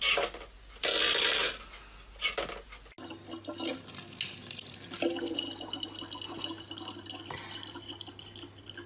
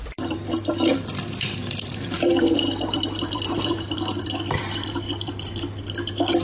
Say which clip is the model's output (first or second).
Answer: second